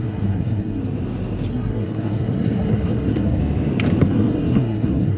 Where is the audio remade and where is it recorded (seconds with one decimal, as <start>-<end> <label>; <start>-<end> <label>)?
0.0-0.8 remade; 0.8-1.5 recorded; 1.5-3.4 remade; 3.4-4.0 recorded; 4.0-5.2 remade